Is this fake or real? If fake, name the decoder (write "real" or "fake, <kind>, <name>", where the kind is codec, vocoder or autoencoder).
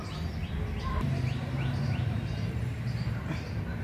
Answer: fake, vocoder, BigVGAN v2